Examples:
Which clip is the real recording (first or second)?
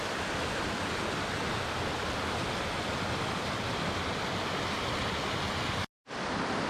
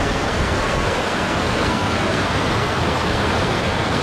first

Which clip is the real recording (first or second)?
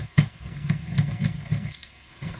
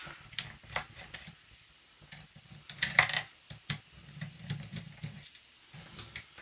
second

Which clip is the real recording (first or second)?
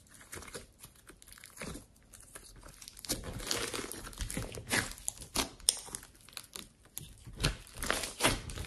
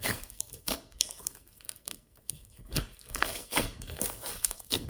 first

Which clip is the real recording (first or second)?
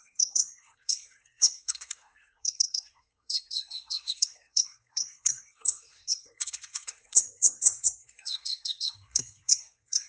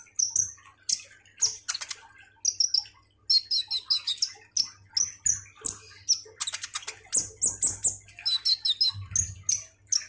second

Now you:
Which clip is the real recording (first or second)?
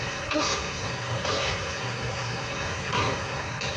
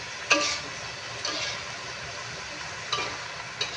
second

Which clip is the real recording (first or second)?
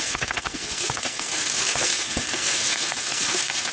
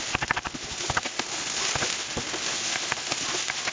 second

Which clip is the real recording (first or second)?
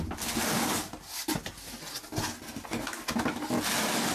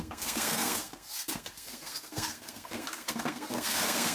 first